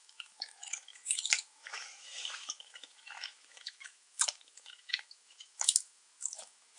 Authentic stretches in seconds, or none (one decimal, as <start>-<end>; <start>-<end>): none